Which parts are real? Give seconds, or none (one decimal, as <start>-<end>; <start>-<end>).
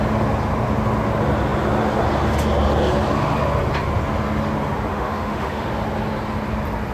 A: 0.0-4.9; 5.7-6.9